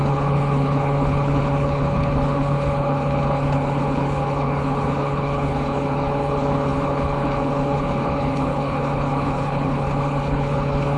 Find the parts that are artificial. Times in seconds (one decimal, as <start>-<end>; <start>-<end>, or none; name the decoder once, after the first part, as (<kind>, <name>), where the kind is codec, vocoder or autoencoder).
0.0-11.0 (codec, HILCodec)